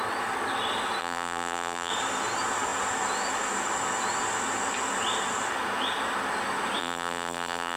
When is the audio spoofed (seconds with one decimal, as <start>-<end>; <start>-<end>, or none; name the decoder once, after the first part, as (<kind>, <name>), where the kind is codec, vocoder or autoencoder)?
1.0-1.9 (vocoder, BigVGAN v2); 6.8-7.8